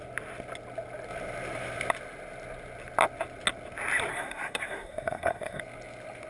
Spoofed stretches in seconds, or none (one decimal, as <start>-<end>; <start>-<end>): 4.1-5.6